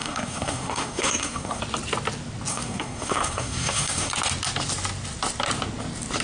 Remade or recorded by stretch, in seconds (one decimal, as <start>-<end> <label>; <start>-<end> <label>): 0.0-1.6 remade; 1.6-2.5 recorded; 2.5-4.1 remade; 4.1-6.2 recorded